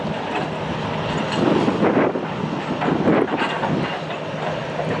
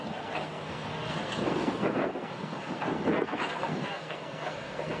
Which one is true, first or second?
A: first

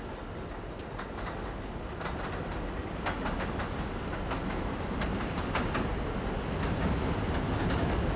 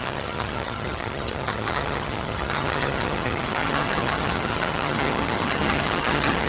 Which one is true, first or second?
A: first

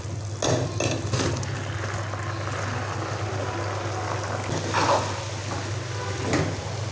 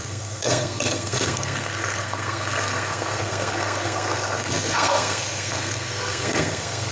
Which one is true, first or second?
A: first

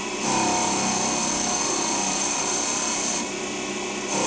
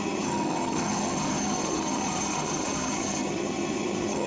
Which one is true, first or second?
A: first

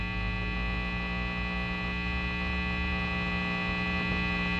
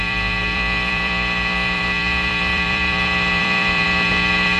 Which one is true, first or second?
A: first